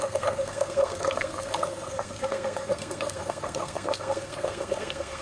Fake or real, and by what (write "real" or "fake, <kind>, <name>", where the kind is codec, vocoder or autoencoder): fake, codec, SNAC